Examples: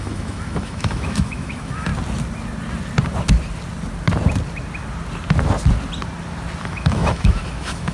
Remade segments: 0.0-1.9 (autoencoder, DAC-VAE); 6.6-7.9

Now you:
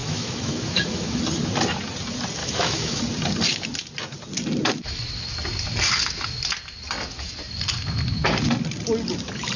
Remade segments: 0.0-1.2 (autoencoder, DAC-VAE); 2.4-3.0

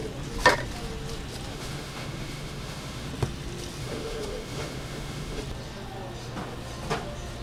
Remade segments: 1.5-3.1 (autoencoder, DAC-VAE); 3.8-5.4

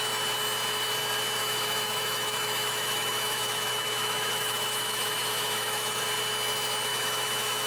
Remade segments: 1.4-6.0 (autoencoder, DAC-VAE); 6.9-7.7